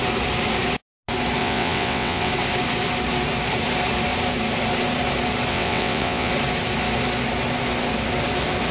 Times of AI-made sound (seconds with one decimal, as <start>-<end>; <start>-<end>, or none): 1.4-2.3; 5.5-6.3